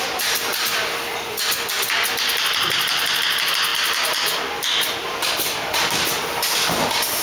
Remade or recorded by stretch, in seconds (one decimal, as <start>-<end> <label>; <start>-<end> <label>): 0.0-3.7 recorded; 3.7-6.1 remade; 6.1-7.2 recorded